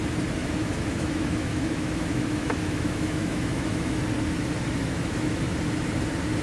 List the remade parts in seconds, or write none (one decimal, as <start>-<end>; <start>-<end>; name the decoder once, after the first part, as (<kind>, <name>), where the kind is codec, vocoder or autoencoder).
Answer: 0.4-4.0 (autoencoder, DAC-VAE); 4.8-5.6